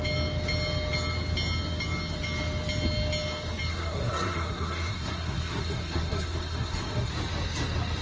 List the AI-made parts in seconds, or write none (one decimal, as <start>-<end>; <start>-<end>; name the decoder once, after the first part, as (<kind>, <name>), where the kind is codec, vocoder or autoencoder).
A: 3.7-7.1 (codec, SNAC)